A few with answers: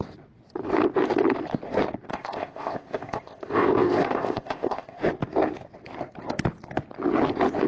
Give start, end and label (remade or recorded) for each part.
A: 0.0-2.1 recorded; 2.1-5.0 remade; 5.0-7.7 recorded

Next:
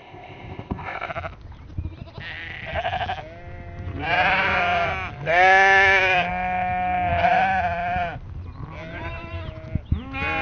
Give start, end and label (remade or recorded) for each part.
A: 0.0-1.1 remade; 1.1-10.4 recorded